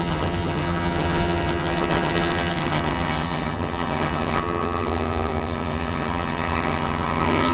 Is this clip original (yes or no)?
no